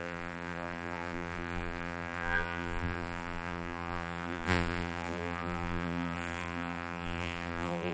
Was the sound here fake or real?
fake